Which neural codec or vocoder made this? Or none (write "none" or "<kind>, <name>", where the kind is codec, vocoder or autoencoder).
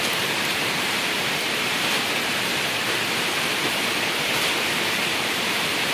vocoder, BigVGAN v2